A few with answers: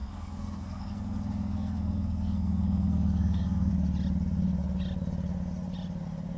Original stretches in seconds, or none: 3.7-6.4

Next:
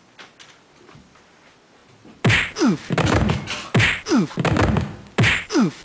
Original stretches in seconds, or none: 0.0-5.8

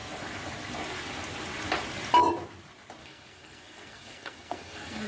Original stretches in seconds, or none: 0.0-3.0

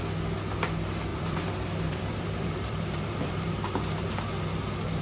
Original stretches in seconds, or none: 0.0-1.1; 4.1-5.0

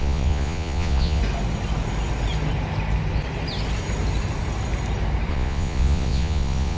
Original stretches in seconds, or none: 1.2-5.3